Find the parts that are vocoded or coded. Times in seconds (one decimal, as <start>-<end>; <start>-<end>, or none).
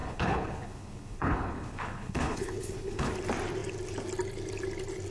0.0-3.1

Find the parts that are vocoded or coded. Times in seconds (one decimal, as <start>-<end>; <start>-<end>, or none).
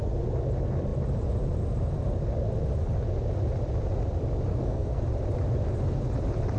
4.5-5.0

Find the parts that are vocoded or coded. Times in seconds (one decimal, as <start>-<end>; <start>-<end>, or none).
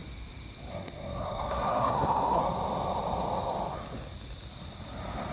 0.7-2.4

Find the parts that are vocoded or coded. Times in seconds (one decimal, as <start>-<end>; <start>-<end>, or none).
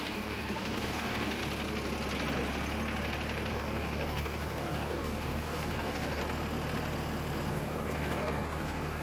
0.0-1.4; 3.5-6.2; 7.5-9.0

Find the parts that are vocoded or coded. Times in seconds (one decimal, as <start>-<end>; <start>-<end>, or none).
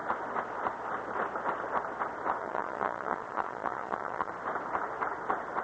2.4-4.3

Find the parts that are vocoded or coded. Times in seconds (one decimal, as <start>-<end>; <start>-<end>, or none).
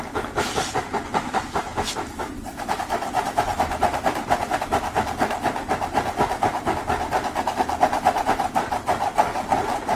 1.7-3.4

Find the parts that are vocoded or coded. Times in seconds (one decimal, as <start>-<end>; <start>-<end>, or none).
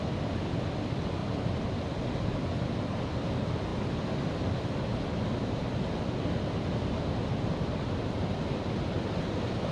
none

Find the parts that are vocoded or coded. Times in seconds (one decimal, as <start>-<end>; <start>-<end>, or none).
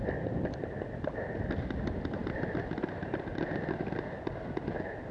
2.2-3.3